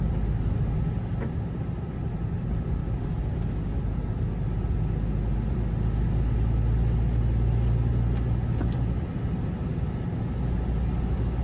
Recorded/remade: recorded